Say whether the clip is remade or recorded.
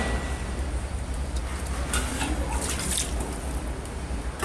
recorded